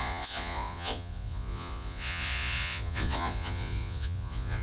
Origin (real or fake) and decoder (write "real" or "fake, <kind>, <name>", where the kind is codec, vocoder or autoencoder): fake, vocoder, Vocos